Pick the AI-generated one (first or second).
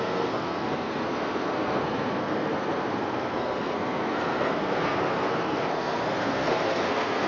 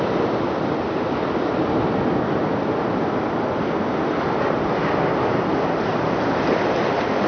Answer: first